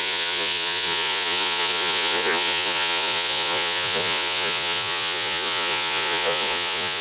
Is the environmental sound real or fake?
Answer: fake